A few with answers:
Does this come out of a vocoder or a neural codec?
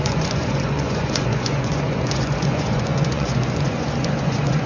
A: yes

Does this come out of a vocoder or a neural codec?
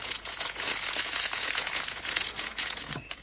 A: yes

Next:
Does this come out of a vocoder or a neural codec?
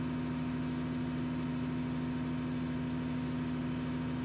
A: no